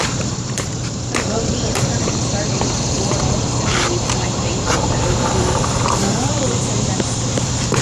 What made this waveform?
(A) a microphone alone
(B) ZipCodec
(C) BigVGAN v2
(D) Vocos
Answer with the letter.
C